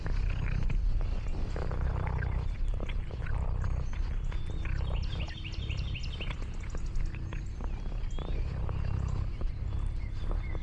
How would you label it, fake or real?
real